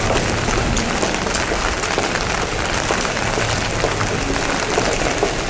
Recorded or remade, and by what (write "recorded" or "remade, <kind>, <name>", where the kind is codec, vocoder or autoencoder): recorded